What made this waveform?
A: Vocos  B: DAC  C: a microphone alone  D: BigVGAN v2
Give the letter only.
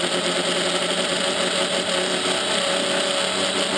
C